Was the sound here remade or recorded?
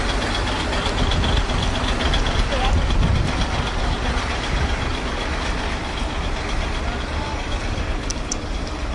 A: recorded